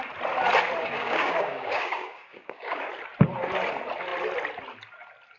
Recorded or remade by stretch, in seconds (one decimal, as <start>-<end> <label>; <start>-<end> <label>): 0.0-0.8 recorded; 0.8-2.9 remade; 2.9-5.4 recorded